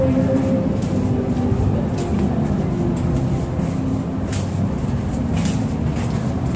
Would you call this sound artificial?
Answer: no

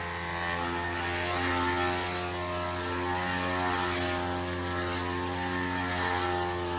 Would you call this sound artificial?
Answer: no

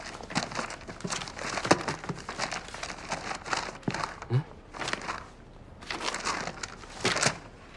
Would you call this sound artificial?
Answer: no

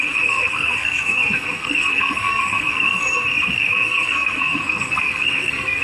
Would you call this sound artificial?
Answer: yes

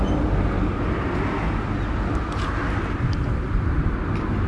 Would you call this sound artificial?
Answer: no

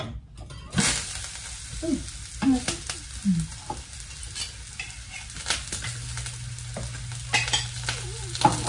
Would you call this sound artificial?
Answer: no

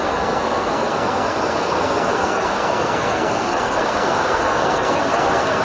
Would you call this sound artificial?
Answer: yes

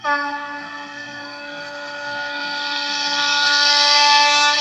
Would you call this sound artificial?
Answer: yes